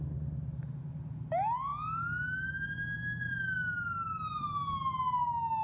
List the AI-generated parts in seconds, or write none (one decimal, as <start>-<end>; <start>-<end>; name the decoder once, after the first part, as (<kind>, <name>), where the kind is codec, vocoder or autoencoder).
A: none